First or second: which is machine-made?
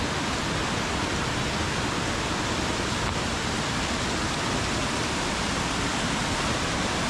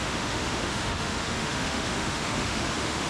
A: second